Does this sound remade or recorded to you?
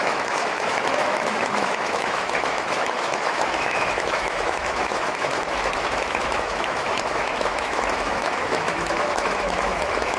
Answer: remade